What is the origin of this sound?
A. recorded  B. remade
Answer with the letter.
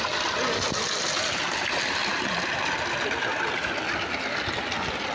A